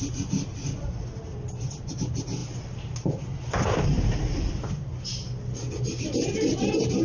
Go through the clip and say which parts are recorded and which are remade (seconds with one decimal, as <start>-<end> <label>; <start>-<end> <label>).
0.0-7.0 recorded